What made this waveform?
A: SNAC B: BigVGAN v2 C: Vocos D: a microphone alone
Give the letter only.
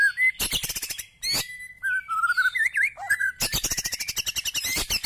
D